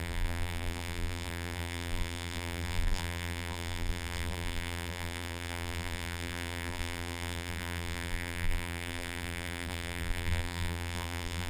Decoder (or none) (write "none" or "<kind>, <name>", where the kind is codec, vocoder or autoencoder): vocoder, BigVGAN v2